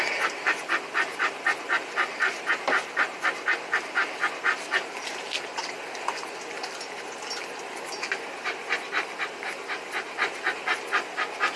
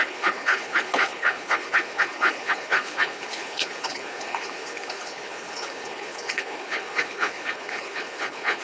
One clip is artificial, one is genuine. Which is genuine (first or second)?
first